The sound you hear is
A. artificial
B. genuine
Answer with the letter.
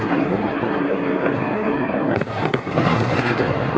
A